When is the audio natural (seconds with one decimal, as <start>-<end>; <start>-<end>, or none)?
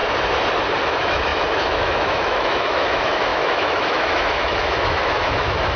0.0-0.8